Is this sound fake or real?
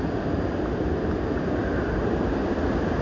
fake